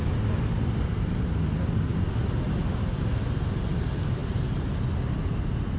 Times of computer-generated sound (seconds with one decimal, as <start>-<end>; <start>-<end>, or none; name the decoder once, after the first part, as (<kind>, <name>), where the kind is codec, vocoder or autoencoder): none

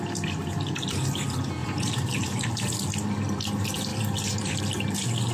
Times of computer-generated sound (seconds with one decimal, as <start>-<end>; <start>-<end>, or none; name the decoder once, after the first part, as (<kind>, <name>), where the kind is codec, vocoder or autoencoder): 1.6-2.6 (vocoder, BigVGAN v2); 3.9-4.6

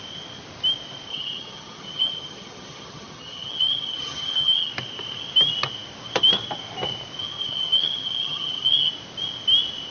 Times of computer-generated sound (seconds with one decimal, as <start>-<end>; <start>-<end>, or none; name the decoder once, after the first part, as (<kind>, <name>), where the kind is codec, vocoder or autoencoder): 1.1-4.7 (vocoder, HiFi-GAN); 7.4-8.9